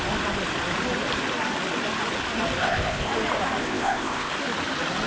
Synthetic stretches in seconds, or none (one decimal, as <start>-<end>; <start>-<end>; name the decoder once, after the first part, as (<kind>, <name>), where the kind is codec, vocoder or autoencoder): 2.6-3.1 (codec, ZipCodec); 3.6-4.3